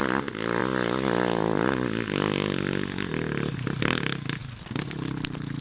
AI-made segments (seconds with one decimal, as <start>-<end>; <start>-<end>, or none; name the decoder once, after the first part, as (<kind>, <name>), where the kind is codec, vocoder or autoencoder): 4.4-5.6 (vocoder, BigVGAN v2)